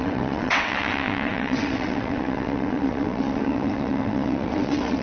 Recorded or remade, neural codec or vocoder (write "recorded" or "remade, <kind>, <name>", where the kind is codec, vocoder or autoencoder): remade, vocoder, WaveNeXt